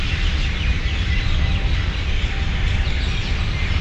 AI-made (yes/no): no